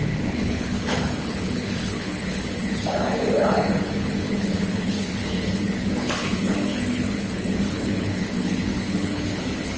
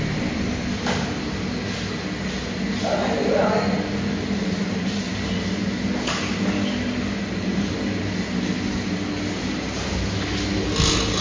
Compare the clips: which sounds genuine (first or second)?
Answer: second